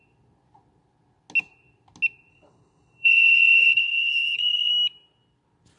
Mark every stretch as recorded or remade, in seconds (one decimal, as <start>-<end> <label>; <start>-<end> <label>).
0.0-2.3 recorded; 2.3-4.7 remade; 4.7-5.8 recorded